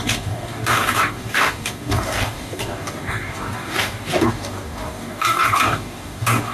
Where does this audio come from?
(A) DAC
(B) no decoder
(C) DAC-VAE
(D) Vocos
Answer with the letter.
A